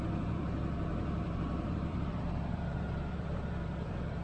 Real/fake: fake